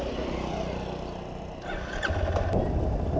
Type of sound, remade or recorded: recorded